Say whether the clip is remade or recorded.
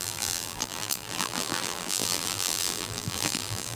remade